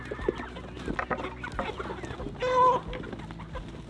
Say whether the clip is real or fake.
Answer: real